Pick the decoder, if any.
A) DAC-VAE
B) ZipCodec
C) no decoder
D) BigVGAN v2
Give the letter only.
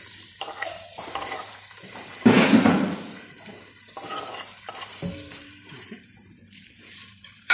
D